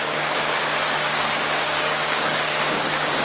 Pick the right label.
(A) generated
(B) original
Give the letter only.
A